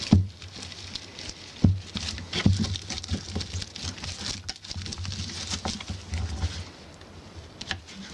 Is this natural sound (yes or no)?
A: yes